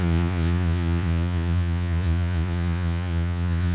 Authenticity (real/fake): fake